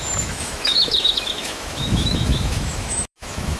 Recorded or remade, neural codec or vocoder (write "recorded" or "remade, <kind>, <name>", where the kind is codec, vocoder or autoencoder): remade, autoencoder, DAC-VAE